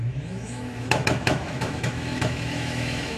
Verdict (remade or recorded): remade